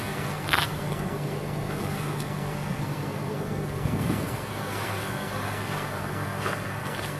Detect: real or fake fake